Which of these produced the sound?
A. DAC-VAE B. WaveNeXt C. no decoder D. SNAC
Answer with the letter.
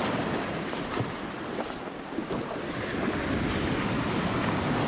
C